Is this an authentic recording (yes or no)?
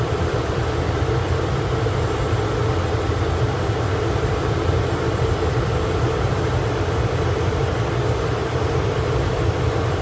no